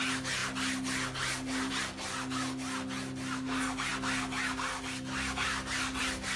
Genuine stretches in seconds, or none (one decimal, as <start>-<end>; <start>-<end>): 0.0-6.4

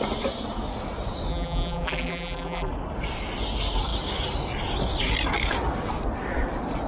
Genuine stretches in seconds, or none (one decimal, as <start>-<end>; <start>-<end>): 0.0-1.3; 2.7-6.9

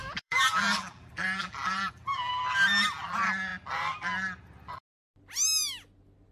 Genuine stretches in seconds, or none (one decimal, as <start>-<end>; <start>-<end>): 2.3-6.3

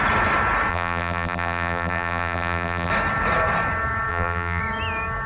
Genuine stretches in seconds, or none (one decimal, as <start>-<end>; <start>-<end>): 0.0-0.7; 2.9-4.1; 4.6-5.3

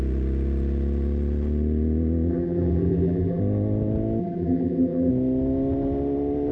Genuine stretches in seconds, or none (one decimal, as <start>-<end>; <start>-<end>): 0.0-2.3; 3.4-4.2; 5.1-6.5

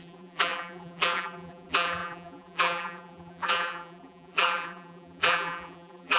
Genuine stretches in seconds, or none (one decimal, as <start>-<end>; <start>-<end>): none

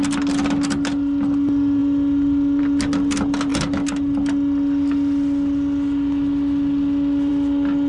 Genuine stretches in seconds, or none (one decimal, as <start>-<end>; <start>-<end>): 0.0-7.9

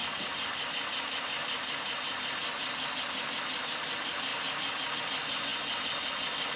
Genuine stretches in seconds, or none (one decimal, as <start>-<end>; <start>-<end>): 0.0-4.3; 5.0-6.6